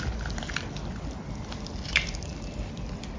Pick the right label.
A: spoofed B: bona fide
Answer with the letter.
B